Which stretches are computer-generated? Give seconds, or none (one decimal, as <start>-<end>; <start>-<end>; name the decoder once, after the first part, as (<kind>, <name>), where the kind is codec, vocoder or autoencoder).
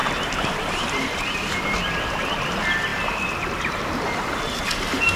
none